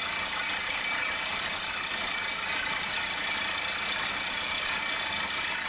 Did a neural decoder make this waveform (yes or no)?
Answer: no